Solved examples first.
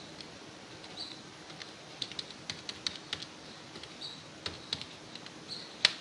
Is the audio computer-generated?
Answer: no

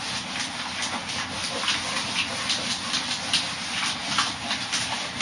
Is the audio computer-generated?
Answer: no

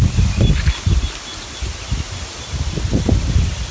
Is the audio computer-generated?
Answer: no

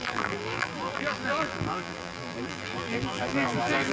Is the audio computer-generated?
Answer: yes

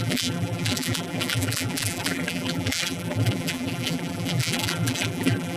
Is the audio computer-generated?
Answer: yes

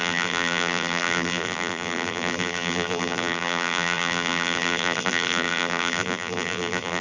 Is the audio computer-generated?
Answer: yes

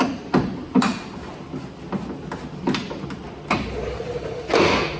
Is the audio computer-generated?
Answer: no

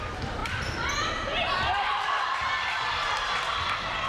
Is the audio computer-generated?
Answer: no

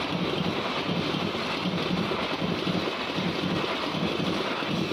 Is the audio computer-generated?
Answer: no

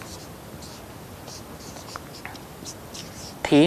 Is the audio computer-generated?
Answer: no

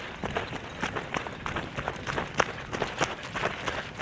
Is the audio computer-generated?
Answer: no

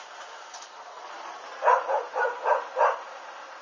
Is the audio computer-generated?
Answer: yes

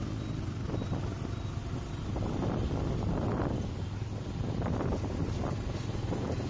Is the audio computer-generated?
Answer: no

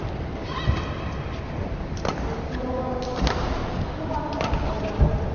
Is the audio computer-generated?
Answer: no